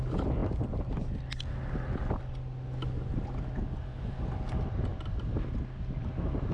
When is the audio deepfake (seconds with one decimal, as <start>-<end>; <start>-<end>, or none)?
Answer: none